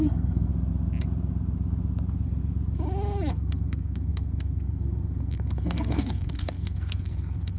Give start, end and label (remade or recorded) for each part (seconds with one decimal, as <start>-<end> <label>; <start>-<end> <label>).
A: 0.0-0.5 remade; 0.5-3.3 recorded; 3.3-7.6 remade